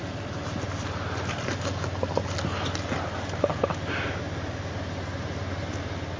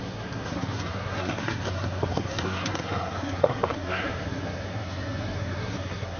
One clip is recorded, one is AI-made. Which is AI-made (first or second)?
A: second